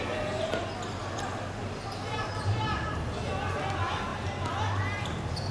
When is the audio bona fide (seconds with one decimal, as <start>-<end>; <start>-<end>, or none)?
0.0-5.5

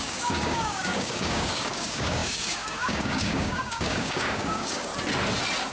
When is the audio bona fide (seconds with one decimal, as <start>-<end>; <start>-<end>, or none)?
4.9-5.7